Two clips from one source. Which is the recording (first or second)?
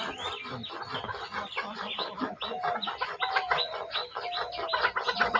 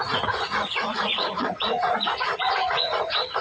first